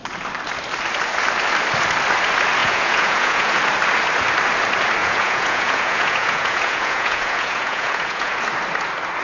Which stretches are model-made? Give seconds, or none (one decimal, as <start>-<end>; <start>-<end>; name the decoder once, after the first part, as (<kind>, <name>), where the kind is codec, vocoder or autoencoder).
2.6-3.6 (vocoder, Vocos); 5.0-8.4